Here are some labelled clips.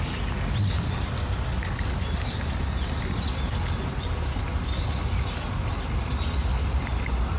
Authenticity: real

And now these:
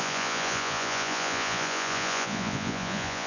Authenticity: fake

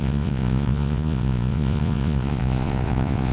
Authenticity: fake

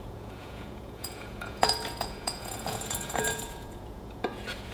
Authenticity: fake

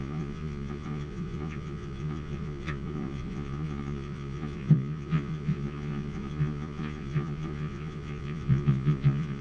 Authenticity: fake